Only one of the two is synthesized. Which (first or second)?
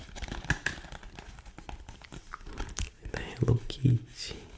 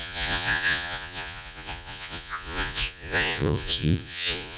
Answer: second